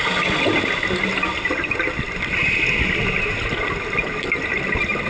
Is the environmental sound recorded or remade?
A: recorded